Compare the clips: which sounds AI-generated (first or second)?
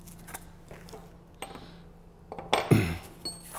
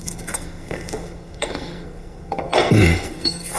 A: second